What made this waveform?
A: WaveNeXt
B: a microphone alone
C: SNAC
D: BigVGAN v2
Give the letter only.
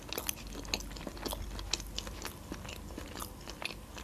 B